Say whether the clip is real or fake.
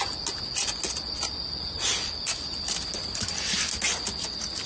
real